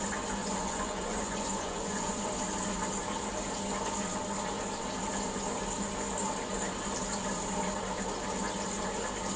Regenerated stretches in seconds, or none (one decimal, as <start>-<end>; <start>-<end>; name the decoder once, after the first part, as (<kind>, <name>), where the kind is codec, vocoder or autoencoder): 0.4-2.3 (vocoder, Vocos)